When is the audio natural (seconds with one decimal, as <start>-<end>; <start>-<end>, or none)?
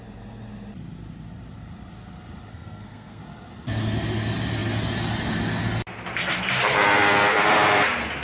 0.0-2.5; 3.2-8.2